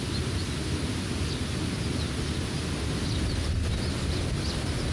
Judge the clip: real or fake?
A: real